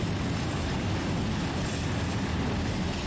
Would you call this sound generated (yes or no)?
no